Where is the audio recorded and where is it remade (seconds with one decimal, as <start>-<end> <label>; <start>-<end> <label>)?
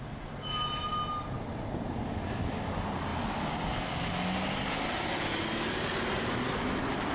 0.0-7.1 recorded